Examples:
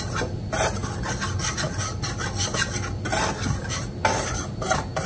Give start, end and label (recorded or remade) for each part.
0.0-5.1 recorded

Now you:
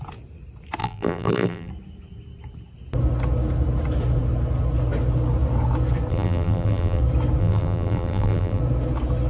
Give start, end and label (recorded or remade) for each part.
0.0-0.8 recorded; 0.8-1.7 remade; 1.7-6.1 recorded; 6.1-7.0 remade; 7.0-7.4 recorded; 7.4-8.6 remade; 8.6-9.3 recorded

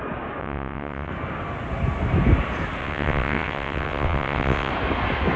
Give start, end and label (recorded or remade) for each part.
0.0-0.4 recorded; 0.4-1.1 remade; 1.1-2.8 recorded; 2.8-4.7 remade; 4.7-5.4 recorded

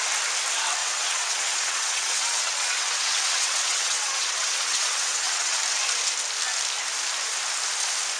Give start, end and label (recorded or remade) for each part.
0.0-0.8 recorded; 0.8-5.6 remade; 5.6-8.2 recorded

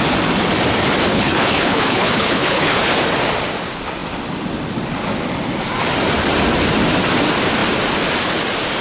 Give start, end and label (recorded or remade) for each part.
0.0-1.1 recorded; 1.1-2.9 remade; 2.9-8.8 recorded

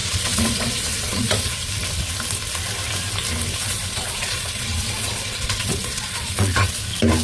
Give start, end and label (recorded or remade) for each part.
0.0-1.7 remade; 1.7-3.6 recorded; 3.6-6.8 remade; 6.8-7.2 recorded